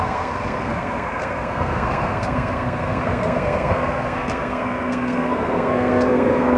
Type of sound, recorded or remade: remade